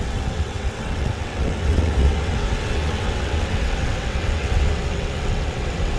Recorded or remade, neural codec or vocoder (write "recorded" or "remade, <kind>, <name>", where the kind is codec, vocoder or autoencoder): remade, vocoder, WaveNeXt